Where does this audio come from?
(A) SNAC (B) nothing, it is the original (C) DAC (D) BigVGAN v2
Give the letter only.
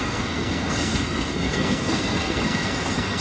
A